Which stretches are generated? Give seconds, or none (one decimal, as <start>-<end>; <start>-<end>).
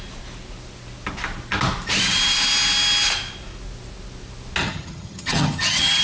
4.6-6.0